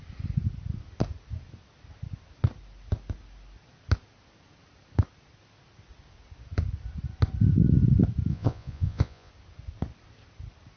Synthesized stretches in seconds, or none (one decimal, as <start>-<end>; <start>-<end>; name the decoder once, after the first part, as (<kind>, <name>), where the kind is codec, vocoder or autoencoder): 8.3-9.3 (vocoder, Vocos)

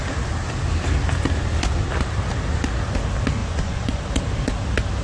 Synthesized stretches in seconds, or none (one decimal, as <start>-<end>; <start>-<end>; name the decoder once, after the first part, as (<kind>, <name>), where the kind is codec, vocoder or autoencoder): 3.4-4.0 (vocoder, Vocos)

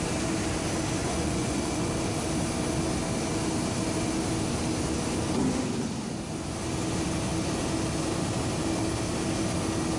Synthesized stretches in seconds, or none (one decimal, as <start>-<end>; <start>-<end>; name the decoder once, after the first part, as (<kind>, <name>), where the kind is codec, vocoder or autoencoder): 1.0-1.9 (vocoder, Vocos)

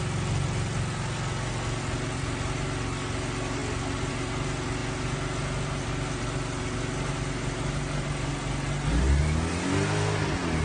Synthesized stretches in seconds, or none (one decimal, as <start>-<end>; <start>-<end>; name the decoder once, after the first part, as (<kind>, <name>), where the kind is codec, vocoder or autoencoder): none

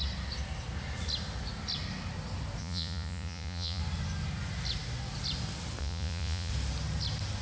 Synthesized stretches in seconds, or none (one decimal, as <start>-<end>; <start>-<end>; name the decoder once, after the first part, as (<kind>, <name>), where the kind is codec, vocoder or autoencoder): 2.6-3.8 (vocoder, Vocos); 5.8-6.5

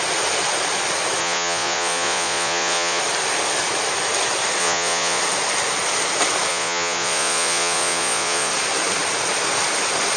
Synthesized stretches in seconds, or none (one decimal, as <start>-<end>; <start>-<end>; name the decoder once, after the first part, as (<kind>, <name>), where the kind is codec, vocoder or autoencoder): 1.2-3.0 (vocoder, Vocos); 4.6-5.2; 6.5-8.5